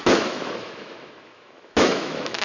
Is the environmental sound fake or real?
fake